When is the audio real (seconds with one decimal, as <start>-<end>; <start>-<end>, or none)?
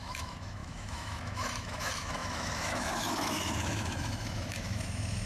none